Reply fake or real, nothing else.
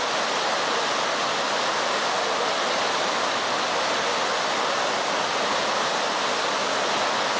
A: real